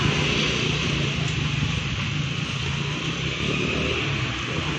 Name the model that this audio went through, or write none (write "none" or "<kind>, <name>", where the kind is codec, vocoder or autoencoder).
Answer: none